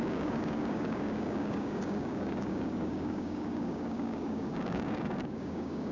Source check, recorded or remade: remade